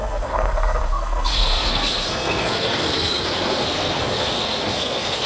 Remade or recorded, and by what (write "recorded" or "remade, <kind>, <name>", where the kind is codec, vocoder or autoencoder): remade, codec, SNAC